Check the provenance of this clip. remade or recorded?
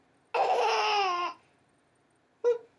recorded